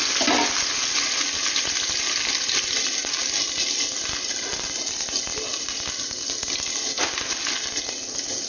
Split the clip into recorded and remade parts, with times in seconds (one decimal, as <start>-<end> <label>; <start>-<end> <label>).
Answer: 0.0-8.5 recorded

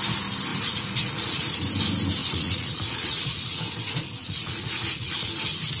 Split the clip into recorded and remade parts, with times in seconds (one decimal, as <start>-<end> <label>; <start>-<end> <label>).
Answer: 0.0-0.5 recorded; 0.5-1.4 remade; 1.4-2.2 recorded; 2.2-3.6 remade; 3.6-4.2 recorded; 4.2-5.3 remade; 5.3-5.8 recorded

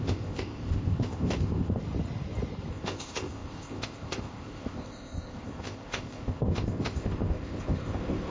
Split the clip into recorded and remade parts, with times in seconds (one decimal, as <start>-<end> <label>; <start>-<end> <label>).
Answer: 0.0-1.8 remade; 1.8-2.7 recorded; 2.7-8.3 remade

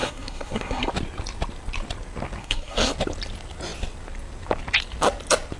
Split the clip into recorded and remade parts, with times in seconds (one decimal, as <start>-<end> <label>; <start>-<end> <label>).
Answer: 0.0-0.9 remade; 0.9-2.4 recorded; 2.4-2.9 remade; 2.9-5.6 recorded

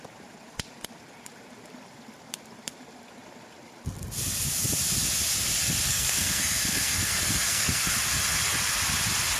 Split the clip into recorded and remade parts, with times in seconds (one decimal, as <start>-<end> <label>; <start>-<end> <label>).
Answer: 0.0-5.9 recorded; 5.9-7.9 remade; 7.9-9.4 recorded

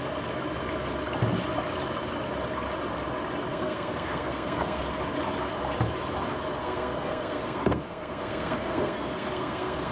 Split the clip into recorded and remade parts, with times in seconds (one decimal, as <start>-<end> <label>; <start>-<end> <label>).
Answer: 0.0-3.5 recorded; 3.5-4.8 remade; 4.8-6.6 recorded; 6.6-9.9 remade

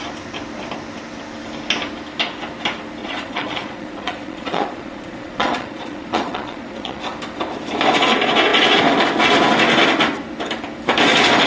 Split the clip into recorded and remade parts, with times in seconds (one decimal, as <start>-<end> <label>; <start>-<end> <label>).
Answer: 0.0-3.0 recorded; 3.0-7.0 remade; 7.0-11.5 recorded